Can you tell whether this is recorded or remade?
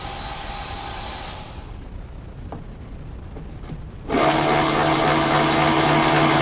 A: recorded